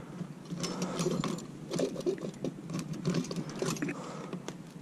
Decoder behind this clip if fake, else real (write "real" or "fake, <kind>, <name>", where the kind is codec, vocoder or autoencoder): real